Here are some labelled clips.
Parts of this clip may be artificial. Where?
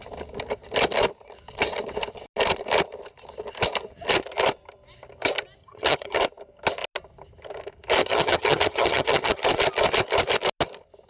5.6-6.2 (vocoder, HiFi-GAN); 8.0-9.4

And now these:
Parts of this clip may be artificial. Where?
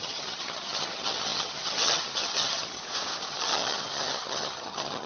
0.0-2.8 (vocoder, HiFi-GAN); 3.3-5.1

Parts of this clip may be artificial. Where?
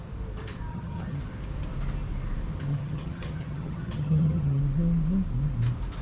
0.7-1.2 (vocoder, HiFi-GAN); 2.7-4.6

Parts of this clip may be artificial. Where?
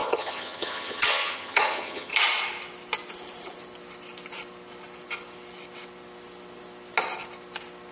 0.0-2.1 (vocoder, HiFi-GAN)